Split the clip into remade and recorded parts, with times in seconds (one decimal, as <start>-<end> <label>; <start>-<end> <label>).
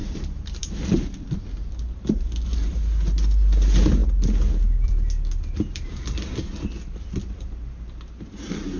0.0-3.1 remade; 3.1-8.8 recorded